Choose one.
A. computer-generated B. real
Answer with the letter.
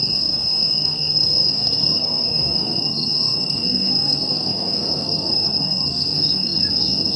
A